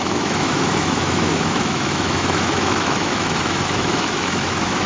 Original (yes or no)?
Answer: no